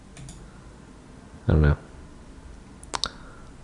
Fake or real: real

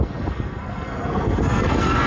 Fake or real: fake